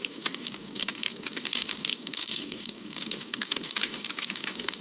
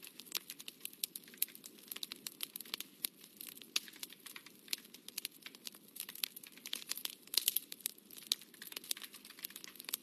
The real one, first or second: second